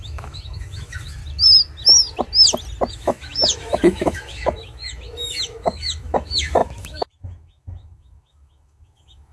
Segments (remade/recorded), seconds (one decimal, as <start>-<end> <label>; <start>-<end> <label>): 0.0-1.2 remade; 1.2-2.9 recorded; 2.9-9.3 remade